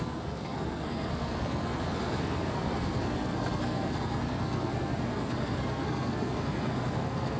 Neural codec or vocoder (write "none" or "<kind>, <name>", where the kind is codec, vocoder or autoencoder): codec, SNAC